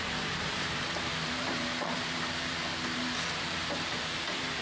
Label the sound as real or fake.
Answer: fake